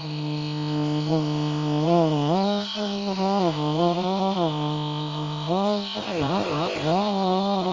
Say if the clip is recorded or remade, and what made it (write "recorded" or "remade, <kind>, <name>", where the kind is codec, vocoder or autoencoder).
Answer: remade, codec, ZipCodec